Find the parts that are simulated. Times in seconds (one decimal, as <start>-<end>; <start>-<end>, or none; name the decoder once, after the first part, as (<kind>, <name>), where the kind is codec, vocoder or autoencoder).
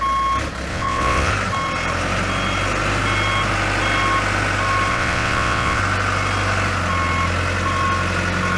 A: 0.7-1.3 (vocoder, WaveNeXt); 4.9-5.8